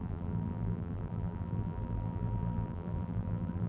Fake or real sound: fake